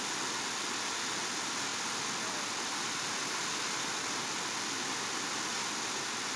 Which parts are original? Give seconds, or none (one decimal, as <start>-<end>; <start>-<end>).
0.0-6.4